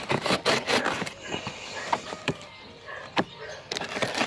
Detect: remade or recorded remade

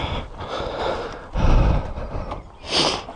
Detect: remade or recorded recorded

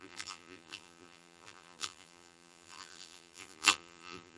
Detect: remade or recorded remade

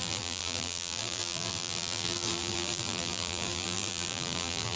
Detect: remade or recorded remade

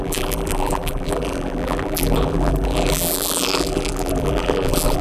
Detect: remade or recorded remade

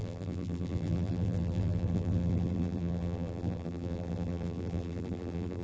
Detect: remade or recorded remade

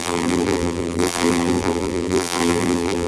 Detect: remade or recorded remade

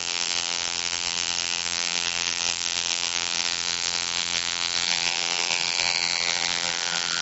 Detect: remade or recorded remade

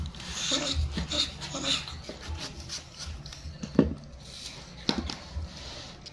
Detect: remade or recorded recorded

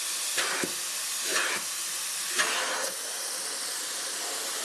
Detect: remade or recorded recorded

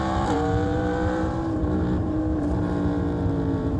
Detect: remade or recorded remade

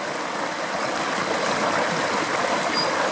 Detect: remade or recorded recorded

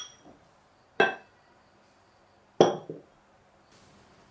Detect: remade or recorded recorded